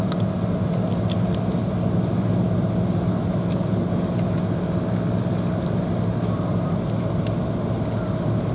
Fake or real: real